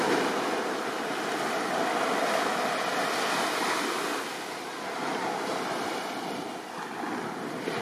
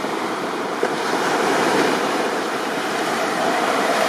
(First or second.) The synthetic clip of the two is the second